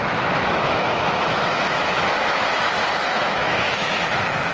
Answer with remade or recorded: remade